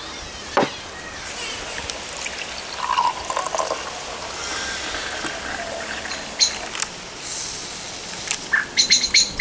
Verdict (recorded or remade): recorded